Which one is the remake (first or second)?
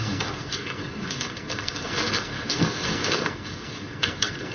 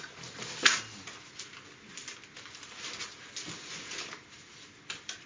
first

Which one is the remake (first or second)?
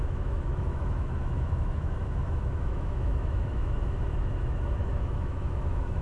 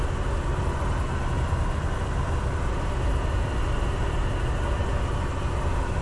first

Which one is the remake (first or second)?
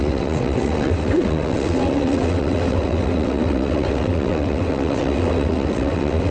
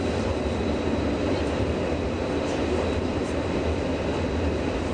first